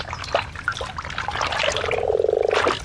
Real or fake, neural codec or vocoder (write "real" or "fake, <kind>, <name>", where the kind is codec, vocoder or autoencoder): real